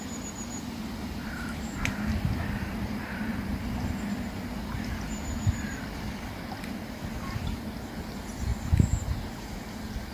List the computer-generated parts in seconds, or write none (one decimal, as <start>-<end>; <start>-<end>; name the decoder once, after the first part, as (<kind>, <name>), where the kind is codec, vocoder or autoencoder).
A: none